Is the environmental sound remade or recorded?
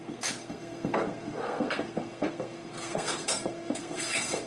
remade